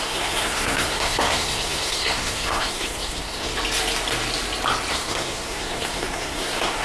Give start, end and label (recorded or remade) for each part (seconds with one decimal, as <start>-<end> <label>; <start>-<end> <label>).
0.0-3.5 remade; 3.5-4.9 recorded; 4.9-6.8 remade